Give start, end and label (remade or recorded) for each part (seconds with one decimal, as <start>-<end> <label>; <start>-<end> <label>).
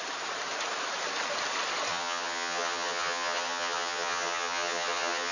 0.0-1.9 recorded; 1.9-5.3 remade